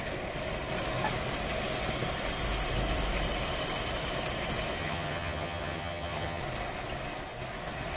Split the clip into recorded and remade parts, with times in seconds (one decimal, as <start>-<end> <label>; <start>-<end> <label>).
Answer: 0.0-4.8 recorded; 4.8-6.4 remade; 6.4-8.0 recorded